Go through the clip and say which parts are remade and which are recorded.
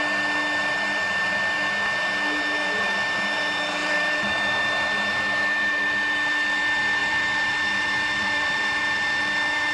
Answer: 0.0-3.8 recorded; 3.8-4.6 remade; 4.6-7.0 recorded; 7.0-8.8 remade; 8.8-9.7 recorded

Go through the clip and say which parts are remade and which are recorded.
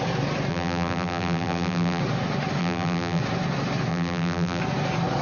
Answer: 0.0-0.5 recorded; 0.5-2.0 remade; 2.0-2.6 recorded; 2.6-3.2 remade; 3.2-3.9 recorded; 3.9-4.6 remade; 4.6-5.2 recorded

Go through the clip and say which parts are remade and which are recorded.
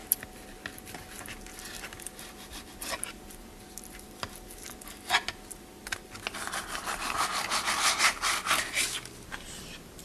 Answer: 0.0-10.0 recorded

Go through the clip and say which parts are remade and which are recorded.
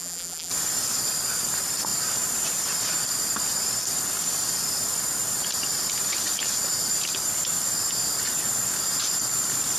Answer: 0.0-0.5 remade; 0.5-9.8 recorded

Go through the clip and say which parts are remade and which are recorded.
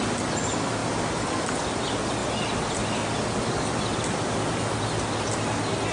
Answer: 0.0-5.9 recorded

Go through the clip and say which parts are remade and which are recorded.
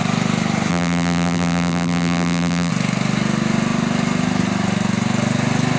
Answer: 0.0-0.7 recorded; 0.7-2.7 remade; 2.7-5.8 recorded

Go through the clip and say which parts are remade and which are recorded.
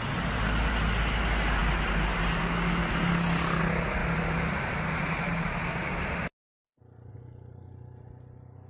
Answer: 0.0-1.6 recorded; 1.6-2.4 remade; 2.4-4.0 recorded; 4.0-5.7 remade; 5.7-8.7 recorded